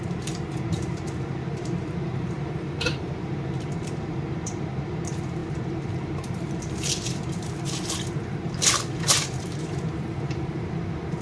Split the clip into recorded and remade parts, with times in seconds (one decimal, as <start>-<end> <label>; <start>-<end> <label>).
0.0-11.2 remade